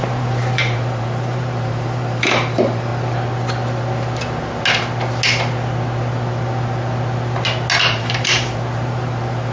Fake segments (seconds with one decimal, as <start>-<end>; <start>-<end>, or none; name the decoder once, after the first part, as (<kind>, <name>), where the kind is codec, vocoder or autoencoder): 0.0-2.9 (vocoder, BigVGAN v2); 7.8-9.5